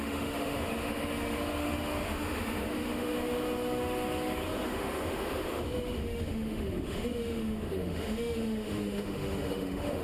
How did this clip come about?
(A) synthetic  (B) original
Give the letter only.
A